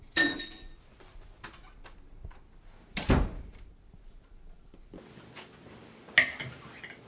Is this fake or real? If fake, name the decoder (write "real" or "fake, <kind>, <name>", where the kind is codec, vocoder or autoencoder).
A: real